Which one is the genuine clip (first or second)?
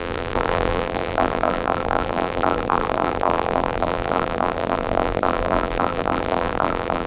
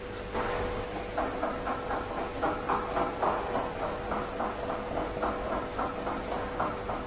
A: second